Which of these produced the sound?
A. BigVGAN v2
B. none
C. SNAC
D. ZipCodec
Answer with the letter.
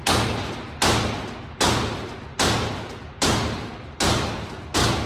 B